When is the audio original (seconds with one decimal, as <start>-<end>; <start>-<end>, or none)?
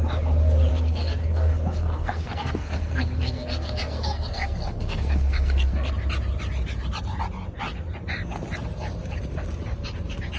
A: 0.0-0.7; 5.9-10.4